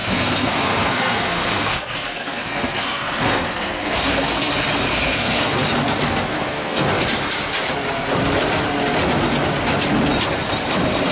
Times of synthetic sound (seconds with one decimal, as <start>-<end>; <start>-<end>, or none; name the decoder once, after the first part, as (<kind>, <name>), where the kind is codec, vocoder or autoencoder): 0.0-4.5 (codec, SNAC); 4.9-5.7; 6.3-6.9